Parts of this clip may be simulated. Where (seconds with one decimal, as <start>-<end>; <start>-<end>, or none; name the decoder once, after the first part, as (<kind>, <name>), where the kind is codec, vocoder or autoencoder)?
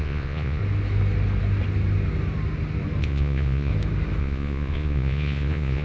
0.0-0.6 (vocoder, Vocos); 3.0-3.7; 4.2-5.8